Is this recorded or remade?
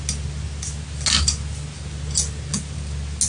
recorded